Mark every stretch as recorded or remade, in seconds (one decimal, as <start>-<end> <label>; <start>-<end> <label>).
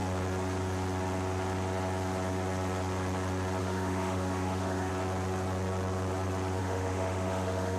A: 0.0-3.6 recorded; 3.6-4.9 remade; 4.9-6.6 recorded; 6.6-7.8 remade